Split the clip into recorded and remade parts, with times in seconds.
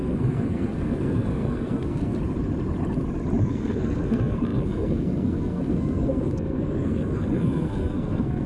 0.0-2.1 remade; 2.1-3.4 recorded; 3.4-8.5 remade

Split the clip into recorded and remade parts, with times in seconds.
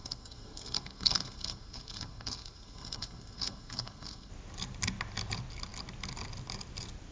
0.0-4.3 remade; 4.3-7.1 recorded